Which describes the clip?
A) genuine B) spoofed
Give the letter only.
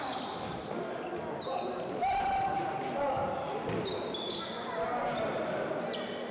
A